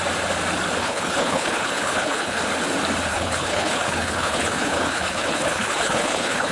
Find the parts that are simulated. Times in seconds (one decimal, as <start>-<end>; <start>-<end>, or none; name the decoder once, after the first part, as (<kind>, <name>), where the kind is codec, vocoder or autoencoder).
0.8-2.4 (codec, HILCodec); 3.1-6.5

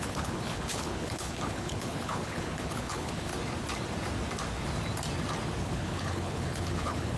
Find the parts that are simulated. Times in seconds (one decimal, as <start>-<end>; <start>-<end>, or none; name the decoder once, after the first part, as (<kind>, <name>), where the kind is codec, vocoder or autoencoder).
0.0-3.3 (codec, HILCodec); 5.6-7.2

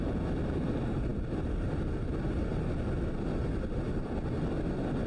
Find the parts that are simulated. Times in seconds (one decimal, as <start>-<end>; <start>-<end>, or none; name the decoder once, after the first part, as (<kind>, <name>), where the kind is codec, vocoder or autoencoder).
none